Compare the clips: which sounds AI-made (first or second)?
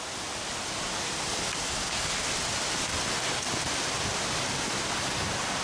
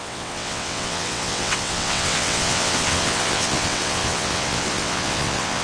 second